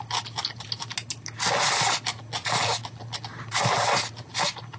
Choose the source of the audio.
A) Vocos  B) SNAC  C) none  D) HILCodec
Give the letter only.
C